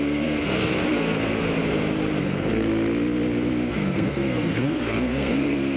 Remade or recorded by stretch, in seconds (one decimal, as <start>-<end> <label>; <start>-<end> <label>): 0.0-1.4 remade; 1.4-2.2 recorded; 2.2-2.7 remade; 2.7-3.7 recorded; 3.7-5.8 remade